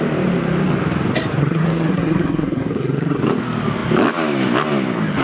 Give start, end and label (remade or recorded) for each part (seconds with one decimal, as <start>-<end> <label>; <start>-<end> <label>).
0.0-1.4 recorded; 1.4-3.2 remade; 3.2-5.2 recorded